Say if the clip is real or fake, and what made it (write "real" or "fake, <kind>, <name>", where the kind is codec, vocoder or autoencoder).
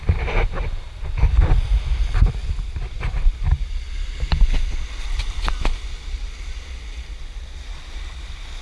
real